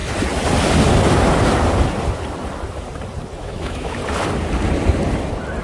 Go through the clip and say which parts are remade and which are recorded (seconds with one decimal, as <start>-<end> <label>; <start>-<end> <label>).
0.0-3.4 recorded; 3.4-4.0 remade; 4.0-5.6 recorded